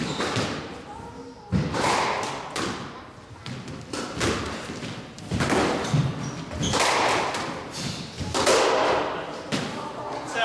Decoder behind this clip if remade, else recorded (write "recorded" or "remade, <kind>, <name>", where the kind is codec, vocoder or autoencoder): recorded